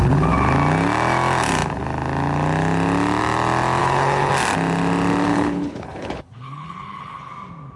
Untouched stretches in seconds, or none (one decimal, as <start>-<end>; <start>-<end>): 0.0-3.8; 4.3-5.3; 7.3-7.8